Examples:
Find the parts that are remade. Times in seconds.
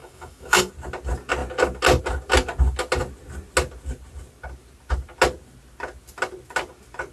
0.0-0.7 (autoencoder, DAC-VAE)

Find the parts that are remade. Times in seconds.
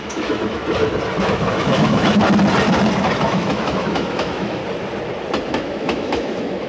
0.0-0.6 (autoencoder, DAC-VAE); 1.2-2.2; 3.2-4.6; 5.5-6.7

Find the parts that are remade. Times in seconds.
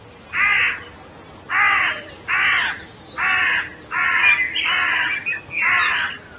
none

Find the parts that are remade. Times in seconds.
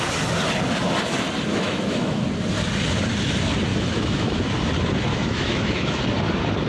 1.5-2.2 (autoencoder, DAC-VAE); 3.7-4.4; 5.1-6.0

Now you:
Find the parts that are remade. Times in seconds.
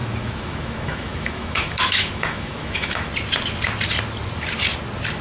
0.0-3.1 (autoencoder, DAC-VAE)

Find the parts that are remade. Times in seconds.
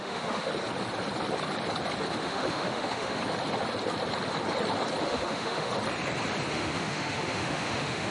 0.0-0.5 (autoencoder, DAC-VAE); 2.1-3.2; 5.0-5.7; 6.5-8.1